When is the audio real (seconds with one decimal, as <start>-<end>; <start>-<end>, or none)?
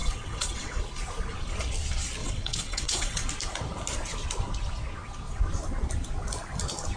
0.8-2.2; 3.3-7.0